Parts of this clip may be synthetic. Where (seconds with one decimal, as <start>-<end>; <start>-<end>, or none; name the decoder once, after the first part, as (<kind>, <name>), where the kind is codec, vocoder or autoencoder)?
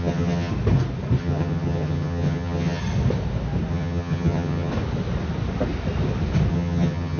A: 0.0-0.5 (vocoder, HiFi-GAN); 1.2-2.8; 3.7-4.7; 6.5-7.2